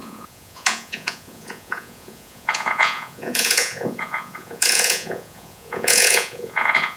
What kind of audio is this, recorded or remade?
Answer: remade